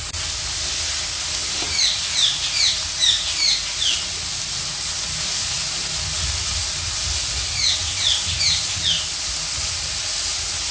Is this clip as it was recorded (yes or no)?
yes